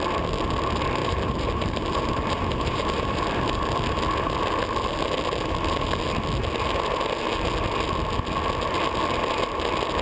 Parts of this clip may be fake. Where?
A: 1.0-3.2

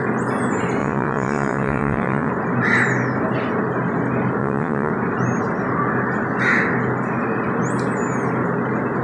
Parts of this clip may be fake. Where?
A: 0.8-2.3; 4.4-4.9

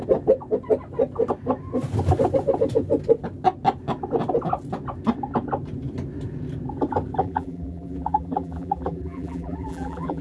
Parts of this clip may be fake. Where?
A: 7.2-10.2

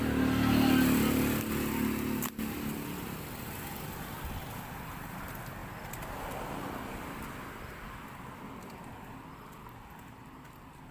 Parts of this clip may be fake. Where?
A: none